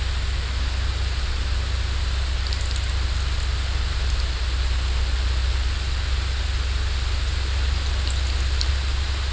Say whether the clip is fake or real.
real